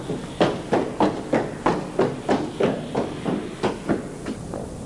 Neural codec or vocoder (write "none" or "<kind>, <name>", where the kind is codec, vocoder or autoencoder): none